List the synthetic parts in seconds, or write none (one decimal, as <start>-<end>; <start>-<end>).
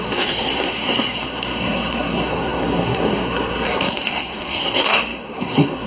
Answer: 0.0-5.9